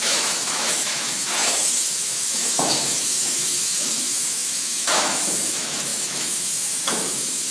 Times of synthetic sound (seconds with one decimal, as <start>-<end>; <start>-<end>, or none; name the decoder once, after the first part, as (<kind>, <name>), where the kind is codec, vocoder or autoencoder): 0.0-7.5 (autoencoder, DAC-VAE)